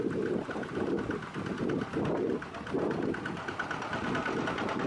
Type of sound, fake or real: real